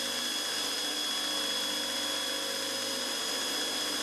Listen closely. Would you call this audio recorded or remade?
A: recorded